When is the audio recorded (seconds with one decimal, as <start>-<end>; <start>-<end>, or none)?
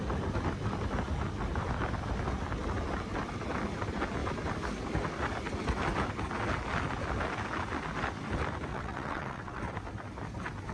0.0-8.7; 9.6-10.7